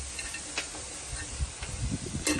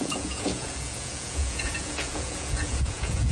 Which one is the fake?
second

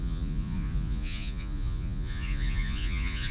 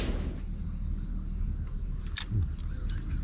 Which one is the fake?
first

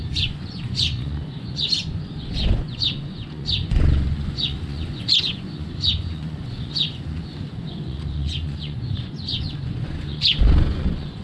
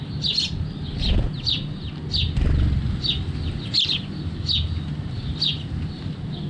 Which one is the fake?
first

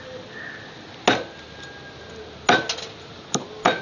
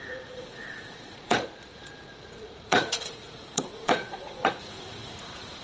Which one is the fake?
second